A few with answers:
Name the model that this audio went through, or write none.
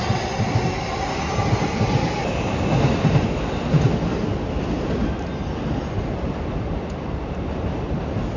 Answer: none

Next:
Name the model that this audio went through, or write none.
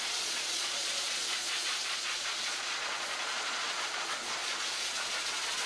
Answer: vocoder, Vocos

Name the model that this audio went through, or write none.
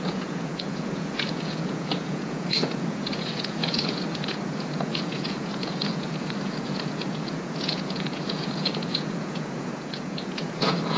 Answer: vocoder, Vocos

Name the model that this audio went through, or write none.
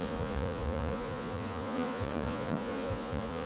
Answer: vocoder, Vocos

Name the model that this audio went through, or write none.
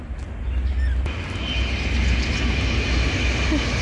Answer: none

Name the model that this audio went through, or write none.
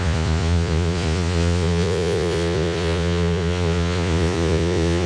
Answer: vocoder, Vocos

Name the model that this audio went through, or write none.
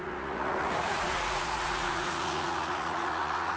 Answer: vocoder, Vocos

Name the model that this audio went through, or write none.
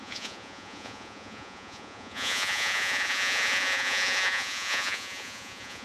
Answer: vocoder, Vocos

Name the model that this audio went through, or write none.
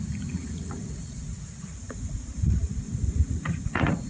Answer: vocoder, Vocos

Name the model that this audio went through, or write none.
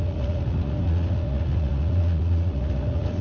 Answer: vocoder, Vocos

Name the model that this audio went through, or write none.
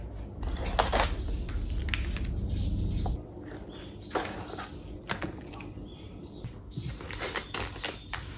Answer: none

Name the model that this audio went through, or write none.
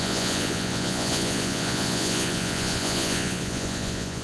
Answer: vocoder, Vocos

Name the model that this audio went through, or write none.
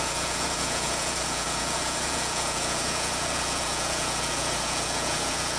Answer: vocoder, Vocos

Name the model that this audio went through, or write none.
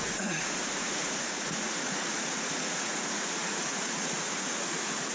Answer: vocoder, Vocos